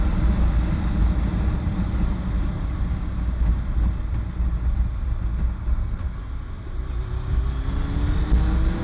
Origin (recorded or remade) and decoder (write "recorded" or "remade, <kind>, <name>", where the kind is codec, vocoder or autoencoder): recorded